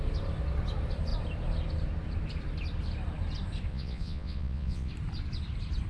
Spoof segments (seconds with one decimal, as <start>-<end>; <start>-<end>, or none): 3.7-4.9